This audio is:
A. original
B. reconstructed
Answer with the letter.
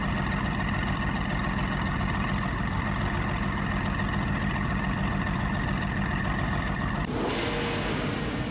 A